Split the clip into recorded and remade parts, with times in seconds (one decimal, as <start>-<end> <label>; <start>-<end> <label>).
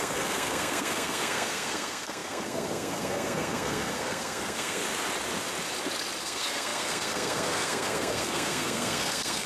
0.0-4.8 remade; 4.8-6.2 recorded; 6.2-9.5 remade